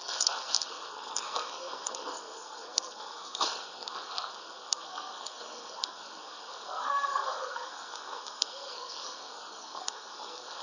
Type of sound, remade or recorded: remade